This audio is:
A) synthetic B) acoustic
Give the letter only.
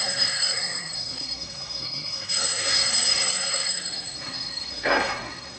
A